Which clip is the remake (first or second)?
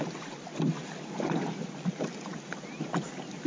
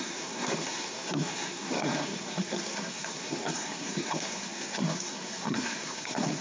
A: second